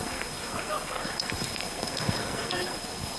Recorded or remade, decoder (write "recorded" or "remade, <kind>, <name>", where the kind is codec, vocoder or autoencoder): remade, codec, SNAC